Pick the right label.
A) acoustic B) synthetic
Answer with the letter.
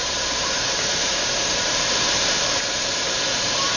B